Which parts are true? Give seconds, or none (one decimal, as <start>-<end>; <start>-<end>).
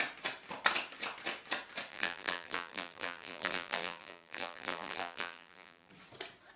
0.0-1.9; 5.9-6.6